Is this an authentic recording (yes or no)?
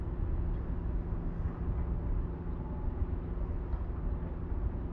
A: yes